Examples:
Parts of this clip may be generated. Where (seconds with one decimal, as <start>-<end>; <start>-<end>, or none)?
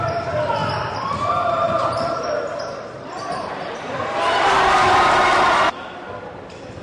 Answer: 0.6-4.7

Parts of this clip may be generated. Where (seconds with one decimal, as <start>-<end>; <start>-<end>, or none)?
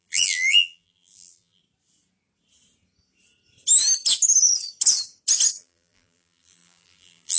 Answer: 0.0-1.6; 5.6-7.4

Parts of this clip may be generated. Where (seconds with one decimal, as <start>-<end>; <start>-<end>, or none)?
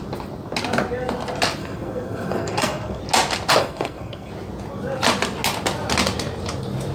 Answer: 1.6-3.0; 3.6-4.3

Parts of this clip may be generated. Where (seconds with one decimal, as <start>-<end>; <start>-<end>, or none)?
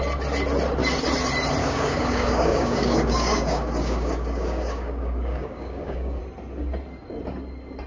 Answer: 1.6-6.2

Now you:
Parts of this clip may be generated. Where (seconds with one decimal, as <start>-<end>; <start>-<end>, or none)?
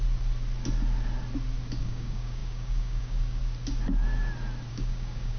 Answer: 1.8-3.4; 4.7-5.4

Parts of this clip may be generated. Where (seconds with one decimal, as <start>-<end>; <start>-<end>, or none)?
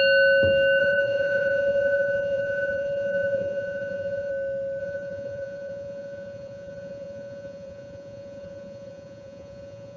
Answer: 0.8-4.3; 4.8-10.0